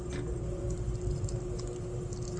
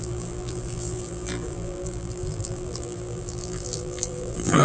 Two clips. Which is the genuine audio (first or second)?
first